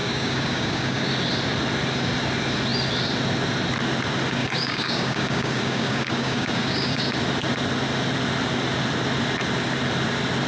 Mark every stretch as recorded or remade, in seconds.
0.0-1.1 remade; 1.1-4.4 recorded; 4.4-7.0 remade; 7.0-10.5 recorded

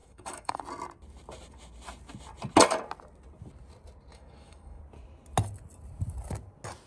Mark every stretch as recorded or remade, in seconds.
0.0-0.6 remade; 0.6-4.1 recorded; 4.1-4.8 remade; 4.8-6.9 recorded

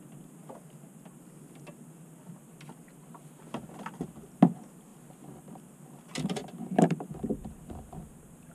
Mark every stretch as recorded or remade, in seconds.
0.0-8.5 recorded

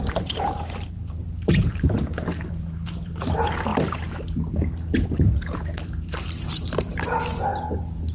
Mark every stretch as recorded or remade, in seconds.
0.0-3.7 remade; 3.7-5.3 recorded; 5.3-7.5 remade; 7.5-8.1 recorded

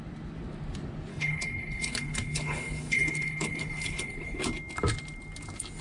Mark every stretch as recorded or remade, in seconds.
0.0-1.1 recorded; 1.1-4.4 remade; 4.4-5.8 recorded